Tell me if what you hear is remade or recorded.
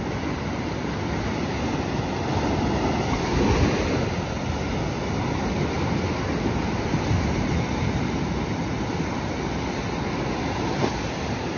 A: recorded